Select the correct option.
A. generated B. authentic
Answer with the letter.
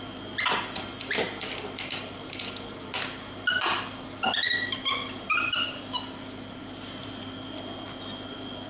B